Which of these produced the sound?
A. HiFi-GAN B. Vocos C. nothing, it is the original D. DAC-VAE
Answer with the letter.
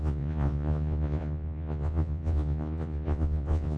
B